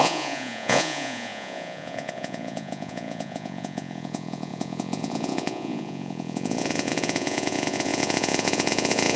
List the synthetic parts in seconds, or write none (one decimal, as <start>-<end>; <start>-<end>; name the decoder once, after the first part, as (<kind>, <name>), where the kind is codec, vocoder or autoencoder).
0.0-9.2 (vocoder, Vocos)